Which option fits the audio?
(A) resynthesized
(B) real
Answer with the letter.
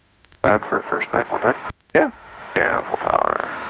A